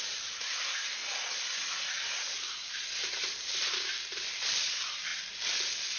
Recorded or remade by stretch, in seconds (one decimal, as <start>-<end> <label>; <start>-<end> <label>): 0.0-1.0 remade; 1.0-2.2 recorded; 2.2-6.0 remade